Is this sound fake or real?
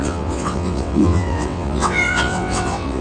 fake